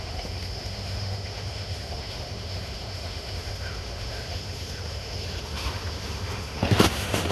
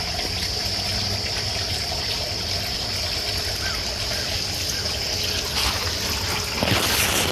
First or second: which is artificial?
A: first